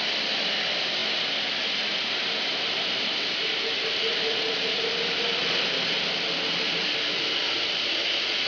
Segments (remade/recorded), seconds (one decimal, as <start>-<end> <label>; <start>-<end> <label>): 0.0-4.1 remade; 4.1-7.4 recorded; 7.4-8.5 remade